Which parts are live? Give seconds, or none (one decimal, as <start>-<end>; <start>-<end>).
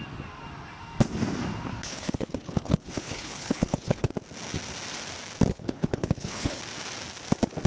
0.0-1.7; 4.1-5.5; 6.6-7.7